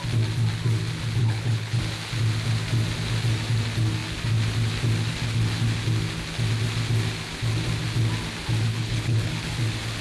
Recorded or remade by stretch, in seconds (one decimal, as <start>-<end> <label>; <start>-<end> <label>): 0.0-1.2 recorded; 1.2-1.8 remade; 1.8-8.7 recorded; 8.7-9.3 remade; 9.3-10.0 recorded